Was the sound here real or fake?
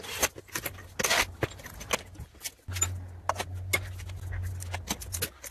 real